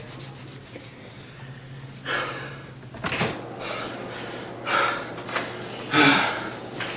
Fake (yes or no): no